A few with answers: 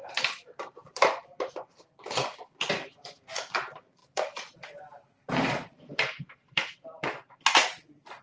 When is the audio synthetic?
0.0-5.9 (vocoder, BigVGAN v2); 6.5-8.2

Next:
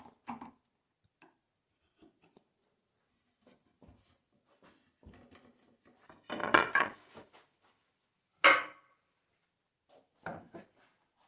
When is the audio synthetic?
6.4-7.1 (vocoder, Vocos)